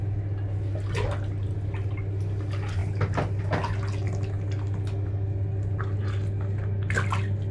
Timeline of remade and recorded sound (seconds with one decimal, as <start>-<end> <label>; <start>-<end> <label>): 0.0-7.5 recorded